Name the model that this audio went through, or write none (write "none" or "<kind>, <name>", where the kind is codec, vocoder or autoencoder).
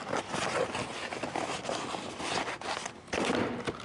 none